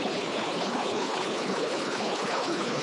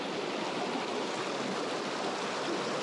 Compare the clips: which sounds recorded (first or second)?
second